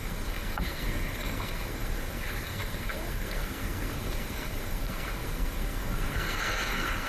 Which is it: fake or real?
fake